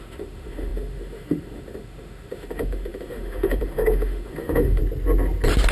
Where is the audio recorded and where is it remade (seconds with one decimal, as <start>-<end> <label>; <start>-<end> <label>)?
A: 0.0-4.8 remade; 4.8-5.7 recorded